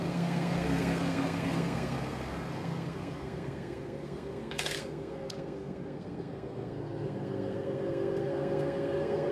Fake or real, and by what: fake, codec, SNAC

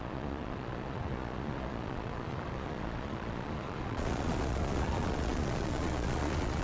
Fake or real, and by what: fake, vocoder, Vocos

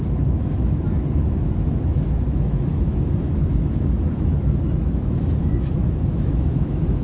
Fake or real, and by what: fake, autoencoder, DAC-VAE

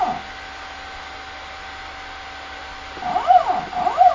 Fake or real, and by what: real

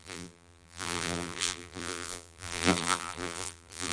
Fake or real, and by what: fake, vocoder, BigVGAN v2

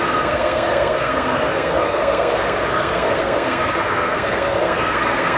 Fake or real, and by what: fake, codec, SNAC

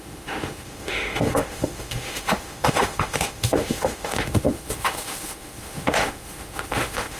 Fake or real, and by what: fake, autoencoder, DAC-VAE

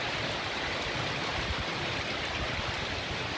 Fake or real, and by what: real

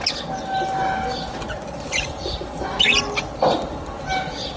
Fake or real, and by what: real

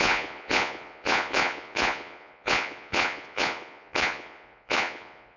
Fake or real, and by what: fake, vocoder, Vocos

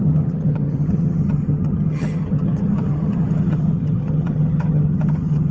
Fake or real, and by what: fake, vocoder, HiFi-GAN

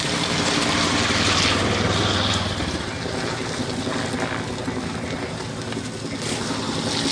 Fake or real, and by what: real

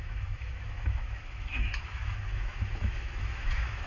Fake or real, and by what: fake, autoencoder, DAC-VAE